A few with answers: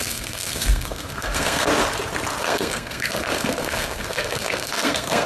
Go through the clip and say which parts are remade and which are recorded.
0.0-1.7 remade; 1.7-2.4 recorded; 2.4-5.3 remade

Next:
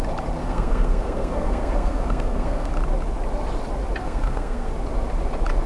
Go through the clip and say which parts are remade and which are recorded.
0.0-0.4 recorded; 0.4-2.7 remade; 2.7-4.0 recorded; 4.0-4.7 remade; 4.7-5.7 recorded

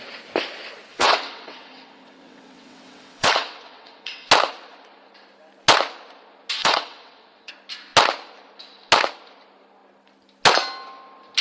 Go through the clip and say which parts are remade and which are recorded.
0.0-0.9 recorded; 0.9-4.3 remade; 4.3-6.6 recorded; 6.6-7.5 remade; 7.5-11.4 recorded

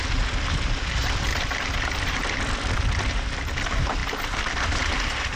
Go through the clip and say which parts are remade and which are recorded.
0.0-1.3 recorded; 1.3-2.4 remade; 2.4-5.4 recorded

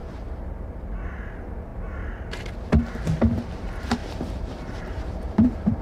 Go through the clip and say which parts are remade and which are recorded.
0.0-0.5 remade; 0.5-4.0 recorded; 4.0-5.8 remade

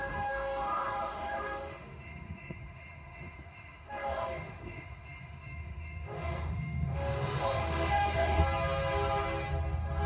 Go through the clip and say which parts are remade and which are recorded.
0.0-8.4 remade; 8.4-10.1 recorded

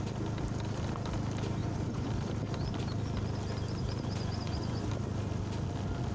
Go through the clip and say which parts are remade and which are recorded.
0.0-1.6 recorded; 1.6-2.1 remade; 2.1-4.2 recorded; 4.2-4.8 remade; 4.8-6.1 recorded

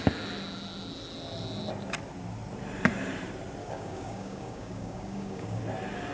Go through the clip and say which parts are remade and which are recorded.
0.0-3.6 recorded; 3.6-5.6 remade; 5.6-6.1 recorded